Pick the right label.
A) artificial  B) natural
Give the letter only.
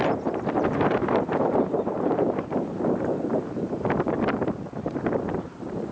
A